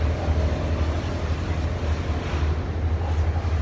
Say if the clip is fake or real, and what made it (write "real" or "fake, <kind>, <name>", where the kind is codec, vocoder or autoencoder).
real